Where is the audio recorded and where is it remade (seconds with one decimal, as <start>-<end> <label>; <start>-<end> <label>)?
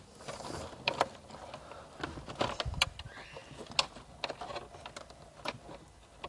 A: 0.0-6.3 recorded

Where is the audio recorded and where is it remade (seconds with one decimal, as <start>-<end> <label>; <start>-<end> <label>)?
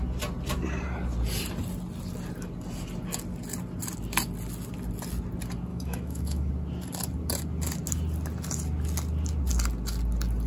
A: 0.0-5.7 recorded; 5.7-6.5 remade; 6.5-10.5 recorded